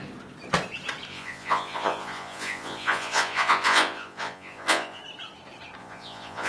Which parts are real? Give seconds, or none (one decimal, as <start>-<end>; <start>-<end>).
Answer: 0.0-1.1; 5.0-5.8

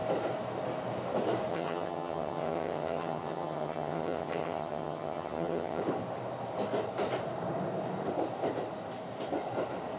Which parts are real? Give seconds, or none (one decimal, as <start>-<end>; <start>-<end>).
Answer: 0.0-1.5; 5.8-10.0